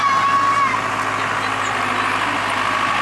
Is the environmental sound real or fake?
real